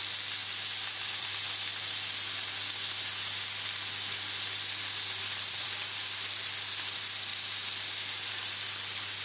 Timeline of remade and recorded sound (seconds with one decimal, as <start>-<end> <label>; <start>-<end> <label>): 0.0-0.4 remade; 0.4-1.2 recorded; 1.2-1.7 remade; 1.7-5.2 recorded; 5.2-7.3 remade; 7.3-8.3 recorded; 8.3-9.2 remade